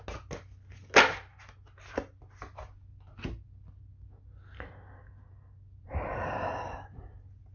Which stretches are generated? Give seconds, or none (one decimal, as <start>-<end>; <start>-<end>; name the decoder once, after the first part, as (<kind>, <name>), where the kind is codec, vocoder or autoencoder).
none